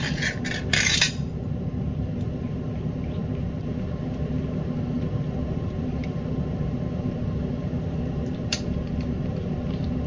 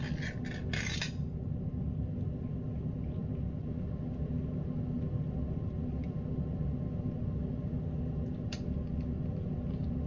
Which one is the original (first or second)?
second